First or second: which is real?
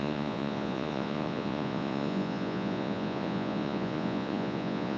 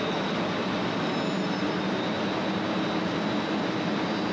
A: second